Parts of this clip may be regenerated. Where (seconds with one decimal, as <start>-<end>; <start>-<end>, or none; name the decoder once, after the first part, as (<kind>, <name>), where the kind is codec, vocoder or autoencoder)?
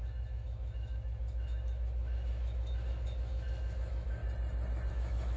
0.0-4.2 (autoencoder, DAC-VAE); 4.9-5.4